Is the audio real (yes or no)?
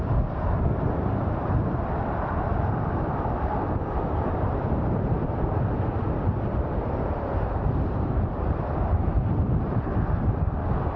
no